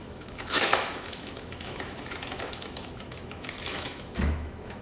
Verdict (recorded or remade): remade